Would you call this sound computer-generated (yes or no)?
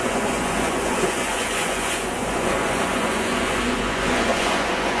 yes